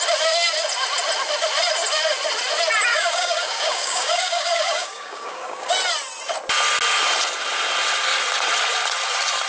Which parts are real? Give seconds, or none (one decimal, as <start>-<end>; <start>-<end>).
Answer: 0.0-2.9; 5.7-9.5

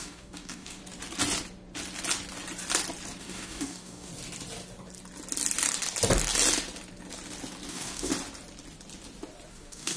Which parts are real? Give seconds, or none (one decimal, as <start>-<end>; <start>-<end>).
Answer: 0.8-3.2; 4.1-7.7; 8.1-9.5

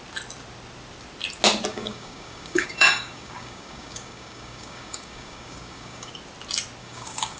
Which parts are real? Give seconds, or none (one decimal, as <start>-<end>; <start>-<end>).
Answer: 0.0-1.7; 6.1-6.8

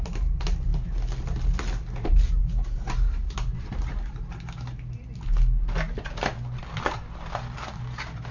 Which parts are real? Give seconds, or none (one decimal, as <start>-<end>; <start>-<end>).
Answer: 0.0-8.3

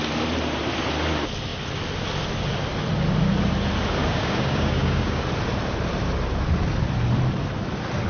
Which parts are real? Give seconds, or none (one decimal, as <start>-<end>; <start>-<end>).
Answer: 0.0-4.0; 5.2-8.1

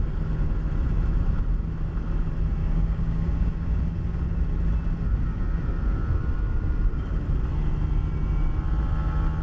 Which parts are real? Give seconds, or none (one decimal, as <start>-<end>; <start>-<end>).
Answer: 0.0-2.6; 3.8-9.4

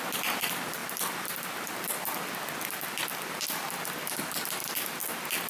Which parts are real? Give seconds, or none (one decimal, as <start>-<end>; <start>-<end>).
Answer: 0.0-5.5